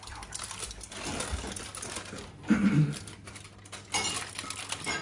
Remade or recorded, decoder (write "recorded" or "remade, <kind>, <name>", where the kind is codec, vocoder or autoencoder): recorded